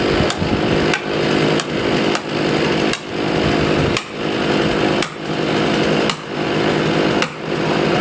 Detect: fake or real real